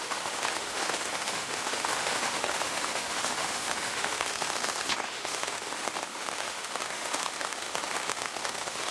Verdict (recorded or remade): remade